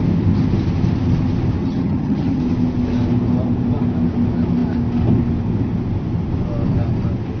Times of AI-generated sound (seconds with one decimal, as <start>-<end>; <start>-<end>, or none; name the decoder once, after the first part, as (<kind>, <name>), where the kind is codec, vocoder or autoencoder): 1.6-2.4 (vocoder, HiFi-GAN)